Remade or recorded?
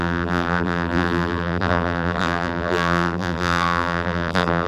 remade